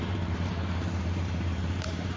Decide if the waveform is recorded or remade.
remade